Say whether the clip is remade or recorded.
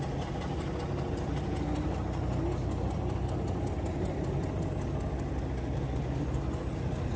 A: recorded